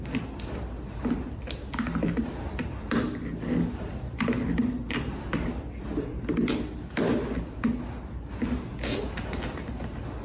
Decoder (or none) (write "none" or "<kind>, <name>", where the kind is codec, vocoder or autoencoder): none